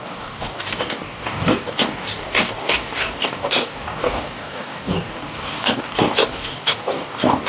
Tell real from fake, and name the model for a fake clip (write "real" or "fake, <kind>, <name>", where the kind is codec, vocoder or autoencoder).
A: fake, codec, DAC